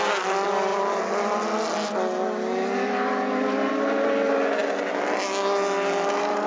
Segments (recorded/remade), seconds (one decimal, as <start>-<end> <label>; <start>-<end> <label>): 0.0-6.5 recorded